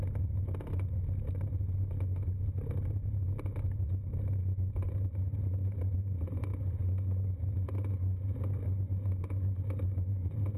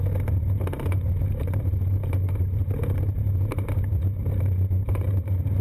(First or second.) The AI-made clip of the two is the second